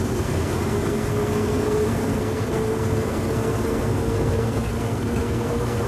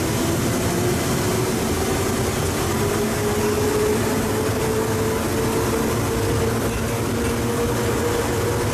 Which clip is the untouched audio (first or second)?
second